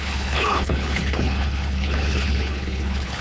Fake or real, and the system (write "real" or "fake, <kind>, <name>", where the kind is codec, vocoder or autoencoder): fake, codec, HILCodec